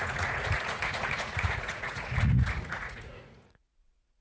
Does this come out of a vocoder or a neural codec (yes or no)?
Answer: yes